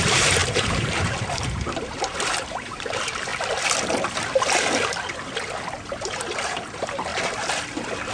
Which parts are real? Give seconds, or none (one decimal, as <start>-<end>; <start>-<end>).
3.3-6.0; 7.1-8.1